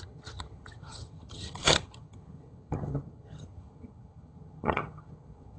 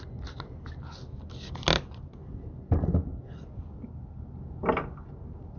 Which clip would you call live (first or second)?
second